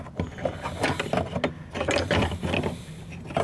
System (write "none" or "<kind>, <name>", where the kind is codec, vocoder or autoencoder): none